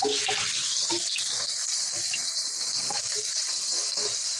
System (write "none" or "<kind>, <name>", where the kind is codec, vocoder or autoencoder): none